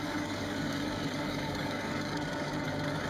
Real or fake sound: fake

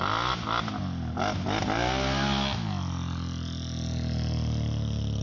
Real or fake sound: real